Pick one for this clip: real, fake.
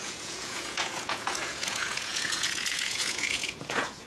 fake